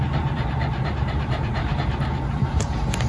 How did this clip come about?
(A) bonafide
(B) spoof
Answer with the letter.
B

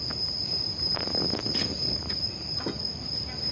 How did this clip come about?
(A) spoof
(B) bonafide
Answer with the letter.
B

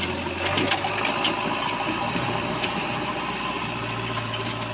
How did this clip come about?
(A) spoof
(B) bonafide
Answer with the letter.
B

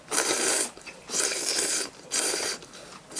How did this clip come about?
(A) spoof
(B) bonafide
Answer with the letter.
A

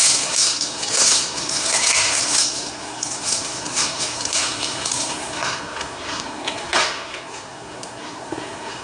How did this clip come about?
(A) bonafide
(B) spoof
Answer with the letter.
B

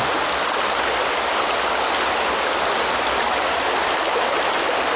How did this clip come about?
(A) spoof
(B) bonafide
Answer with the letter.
B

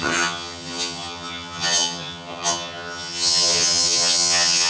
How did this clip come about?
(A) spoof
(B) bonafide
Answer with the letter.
A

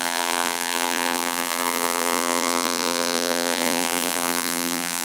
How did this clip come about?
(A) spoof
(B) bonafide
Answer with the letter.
A